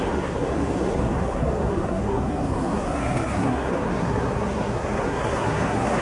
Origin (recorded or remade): remade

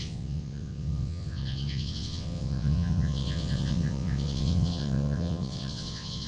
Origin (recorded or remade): remade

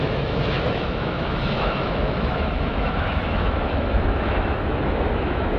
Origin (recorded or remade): remade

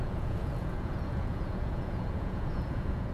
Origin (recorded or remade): remade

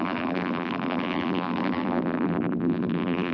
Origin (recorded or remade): remade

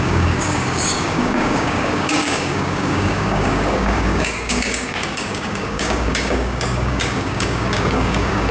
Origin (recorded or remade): remade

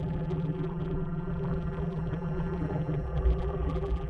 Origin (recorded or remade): remade